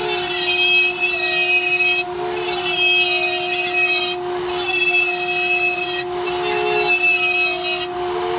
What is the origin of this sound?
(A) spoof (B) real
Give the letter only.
B